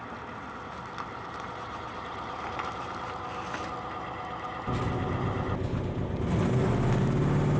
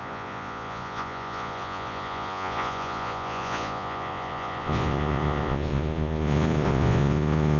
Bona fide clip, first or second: first